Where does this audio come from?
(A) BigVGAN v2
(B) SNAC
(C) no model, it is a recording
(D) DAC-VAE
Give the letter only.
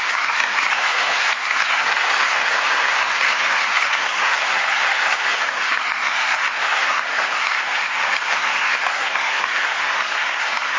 B